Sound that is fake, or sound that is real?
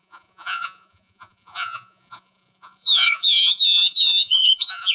fake